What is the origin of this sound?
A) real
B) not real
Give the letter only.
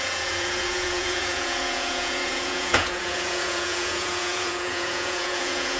B